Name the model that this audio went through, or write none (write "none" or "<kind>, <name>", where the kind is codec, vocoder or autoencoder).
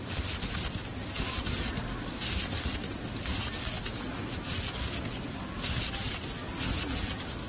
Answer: none